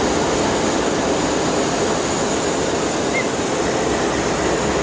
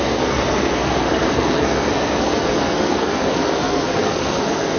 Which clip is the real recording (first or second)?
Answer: first